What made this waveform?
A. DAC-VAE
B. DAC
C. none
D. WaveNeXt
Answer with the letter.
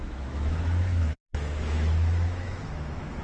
A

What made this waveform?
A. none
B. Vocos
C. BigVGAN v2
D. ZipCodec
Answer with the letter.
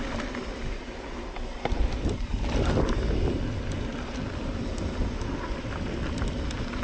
A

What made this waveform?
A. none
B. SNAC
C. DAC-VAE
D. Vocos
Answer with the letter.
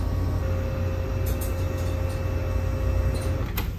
A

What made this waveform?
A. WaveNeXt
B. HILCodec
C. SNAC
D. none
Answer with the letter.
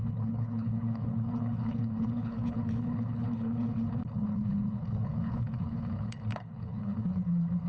B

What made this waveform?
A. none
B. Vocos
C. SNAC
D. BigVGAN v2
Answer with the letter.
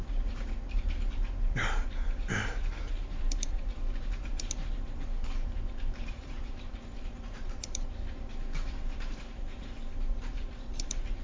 D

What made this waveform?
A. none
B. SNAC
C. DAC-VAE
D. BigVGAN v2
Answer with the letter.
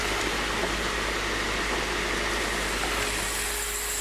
A